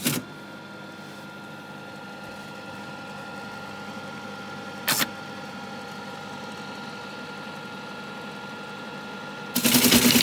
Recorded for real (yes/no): yes